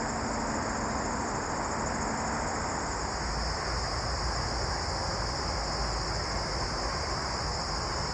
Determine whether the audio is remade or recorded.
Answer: recorded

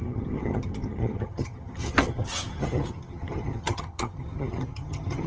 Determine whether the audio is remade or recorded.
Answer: remade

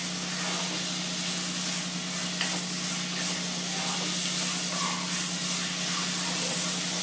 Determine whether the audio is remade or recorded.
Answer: recorded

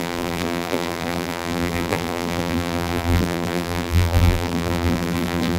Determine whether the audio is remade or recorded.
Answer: remade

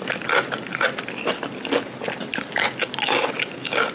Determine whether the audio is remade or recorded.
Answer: recorded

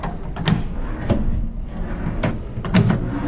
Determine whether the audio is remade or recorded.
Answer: recorded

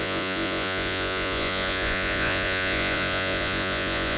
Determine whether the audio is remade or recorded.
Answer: remade